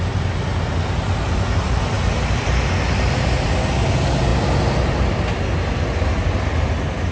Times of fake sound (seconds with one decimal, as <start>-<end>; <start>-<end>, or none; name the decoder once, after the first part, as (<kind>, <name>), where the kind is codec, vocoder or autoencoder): none

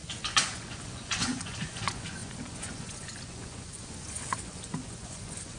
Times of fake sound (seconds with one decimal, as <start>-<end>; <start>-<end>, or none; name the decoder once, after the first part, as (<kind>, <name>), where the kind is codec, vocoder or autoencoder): 0.0-5.6 (vocoder, Vocos)

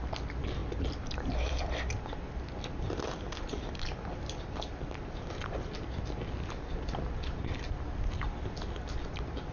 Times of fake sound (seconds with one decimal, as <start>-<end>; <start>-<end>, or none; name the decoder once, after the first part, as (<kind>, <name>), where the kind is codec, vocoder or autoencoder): none

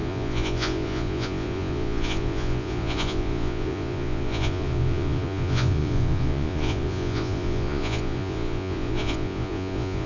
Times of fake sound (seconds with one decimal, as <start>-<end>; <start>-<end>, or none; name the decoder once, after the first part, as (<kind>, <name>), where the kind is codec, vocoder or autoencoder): 0.0-10.1 (vocoder, Vocos)

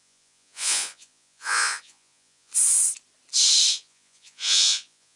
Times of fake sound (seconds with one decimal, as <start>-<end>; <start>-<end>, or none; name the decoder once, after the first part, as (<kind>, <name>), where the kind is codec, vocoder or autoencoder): 0.0-2.5 (vocoder, Vocos); 3.7-5.2

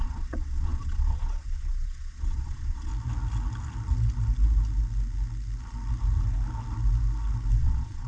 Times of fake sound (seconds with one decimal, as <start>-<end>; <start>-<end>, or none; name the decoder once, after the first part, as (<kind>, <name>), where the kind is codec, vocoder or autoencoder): 0.0-2.9 (vocoder, Vocos); 7.6-8.1

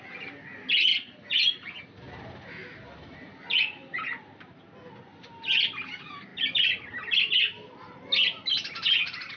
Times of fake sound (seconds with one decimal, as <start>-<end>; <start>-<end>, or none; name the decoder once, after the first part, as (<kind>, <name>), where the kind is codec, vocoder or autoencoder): none